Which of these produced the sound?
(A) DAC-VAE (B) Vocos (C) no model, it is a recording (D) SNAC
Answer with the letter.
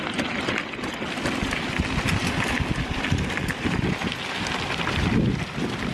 C